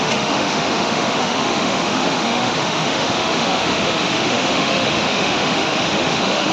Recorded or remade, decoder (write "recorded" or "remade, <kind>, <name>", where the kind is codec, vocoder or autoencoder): remade, autoencoder, DAC-VAE